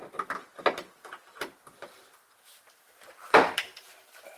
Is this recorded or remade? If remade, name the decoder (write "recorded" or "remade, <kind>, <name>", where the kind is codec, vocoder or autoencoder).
recorded